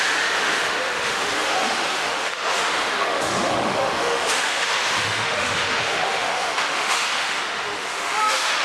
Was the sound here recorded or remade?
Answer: remade